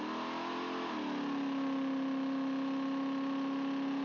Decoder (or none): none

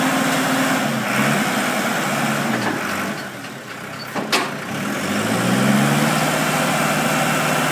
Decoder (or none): none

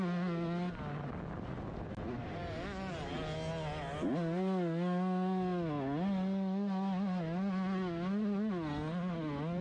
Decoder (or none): none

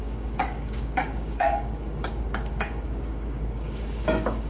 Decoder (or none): codec, DAC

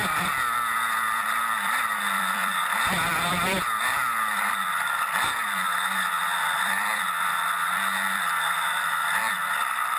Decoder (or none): vocoder, BigVGAN v2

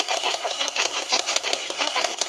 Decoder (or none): codec, SNAC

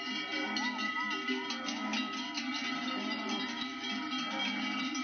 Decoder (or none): none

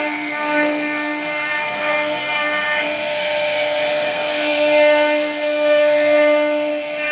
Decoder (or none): codec, SNAC